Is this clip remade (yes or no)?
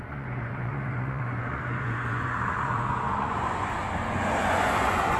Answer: yes